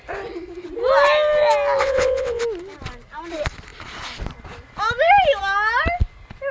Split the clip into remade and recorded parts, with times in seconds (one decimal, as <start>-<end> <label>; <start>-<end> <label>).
0.0-1.8 recorded; 1.8-2.4 remade; 2.4-6.5 recorded